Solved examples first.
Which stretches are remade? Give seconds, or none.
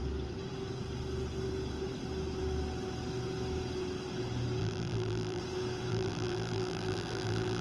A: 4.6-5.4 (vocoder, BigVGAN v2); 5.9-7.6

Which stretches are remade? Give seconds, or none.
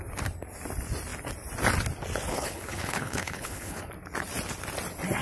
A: 2.3-3.8 (codec, HILCodec)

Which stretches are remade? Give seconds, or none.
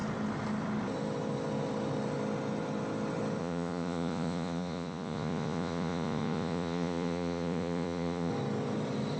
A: 3.4-8.3 (vocoder, Vocos)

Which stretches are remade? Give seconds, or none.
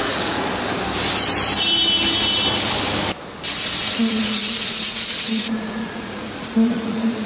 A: 0.0-0.5 (vocoder, Vocos); 3.8-7.3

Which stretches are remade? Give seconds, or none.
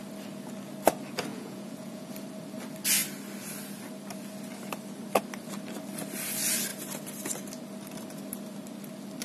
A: 1.3-2.1 (vocoder, Vocos)